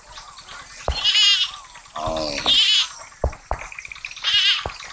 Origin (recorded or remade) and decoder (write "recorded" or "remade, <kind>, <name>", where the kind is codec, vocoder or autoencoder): recorded